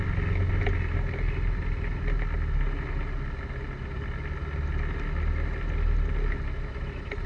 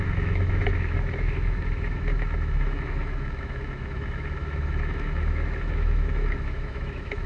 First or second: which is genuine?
first